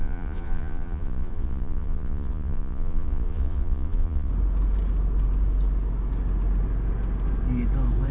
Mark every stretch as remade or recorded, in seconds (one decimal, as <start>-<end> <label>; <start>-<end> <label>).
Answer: 0.0-4.3 remade; 4.3-8.1 recorded